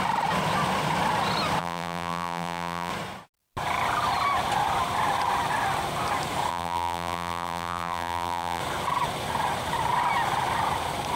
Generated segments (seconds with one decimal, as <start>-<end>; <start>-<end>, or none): 1.6-2.9; 6.5-8.6